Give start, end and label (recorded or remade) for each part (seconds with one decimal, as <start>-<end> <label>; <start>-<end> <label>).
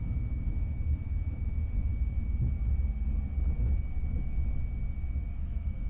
0.0-1.9 remade; 1.9-5.4 recorded; 5.4-5.9 remade